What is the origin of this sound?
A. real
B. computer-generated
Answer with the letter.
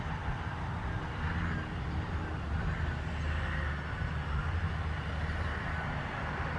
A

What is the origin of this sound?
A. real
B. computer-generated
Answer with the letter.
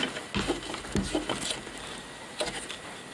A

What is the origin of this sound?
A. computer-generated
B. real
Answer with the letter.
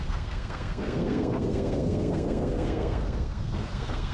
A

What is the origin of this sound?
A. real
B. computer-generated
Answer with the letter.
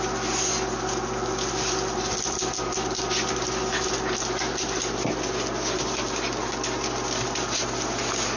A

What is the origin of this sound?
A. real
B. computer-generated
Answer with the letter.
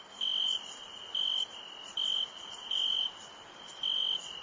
A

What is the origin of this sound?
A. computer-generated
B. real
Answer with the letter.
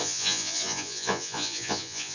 A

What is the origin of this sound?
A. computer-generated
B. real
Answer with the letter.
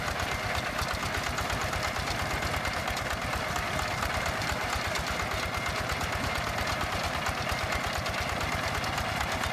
B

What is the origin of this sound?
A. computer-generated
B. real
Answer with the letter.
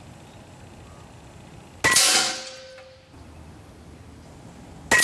B